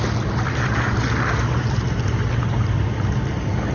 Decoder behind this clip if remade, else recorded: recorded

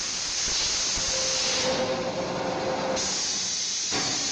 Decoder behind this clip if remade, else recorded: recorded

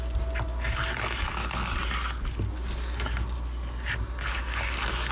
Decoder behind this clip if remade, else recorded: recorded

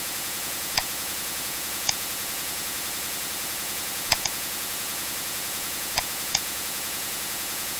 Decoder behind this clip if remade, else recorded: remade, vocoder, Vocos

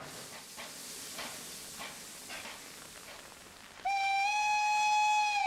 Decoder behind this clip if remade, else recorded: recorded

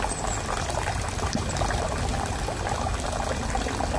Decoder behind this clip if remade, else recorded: recorded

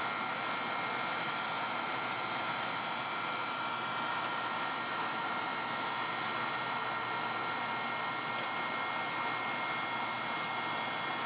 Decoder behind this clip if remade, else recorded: recorded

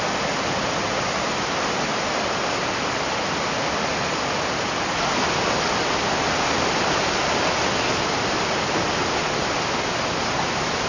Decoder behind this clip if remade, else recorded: recorded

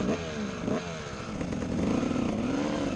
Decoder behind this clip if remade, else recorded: recorded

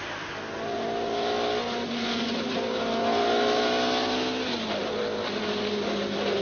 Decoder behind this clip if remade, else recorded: recorded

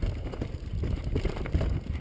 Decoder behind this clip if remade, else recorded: recorded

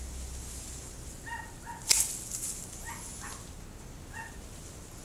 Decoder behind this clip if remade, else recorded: recorded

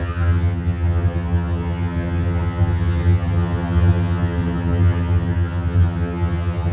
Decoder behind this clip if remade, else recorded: remade, vocoder, HiFi-GAN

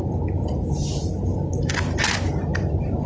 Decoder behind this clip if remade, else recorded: recorded